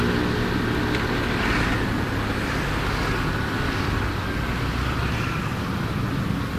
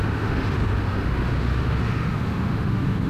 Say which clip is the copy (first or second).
second